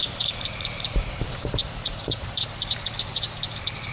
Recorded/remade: remade